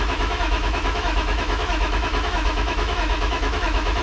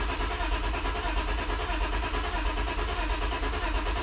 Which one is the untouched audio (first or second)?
second